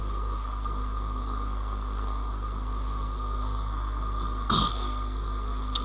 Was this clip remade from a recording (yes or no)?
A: yes